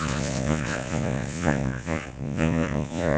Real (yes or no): no